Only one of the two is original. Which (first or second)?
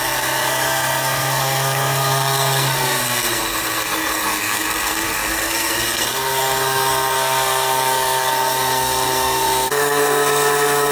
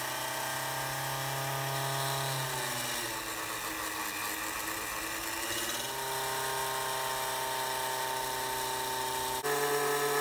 second